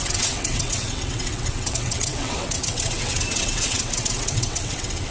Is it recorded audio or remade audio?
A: remade